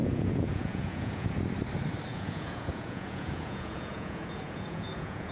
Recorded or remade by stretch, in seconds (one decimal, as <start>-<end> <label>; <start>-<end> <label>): 0.0-1.3 remade; 1.3-2.1 recorded; 2.1-5.3 remade